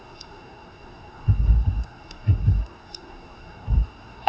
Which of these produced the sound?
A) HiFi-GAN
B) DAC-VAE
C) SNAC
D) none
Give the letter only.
C